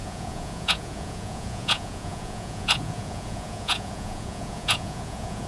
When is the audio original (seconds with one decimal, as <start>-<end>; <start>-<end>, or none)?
none